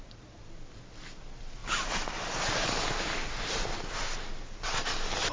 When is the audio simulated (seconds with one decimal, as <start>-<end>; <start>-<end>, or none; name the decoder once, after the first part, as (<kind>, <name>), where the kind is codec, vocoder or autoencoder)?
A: none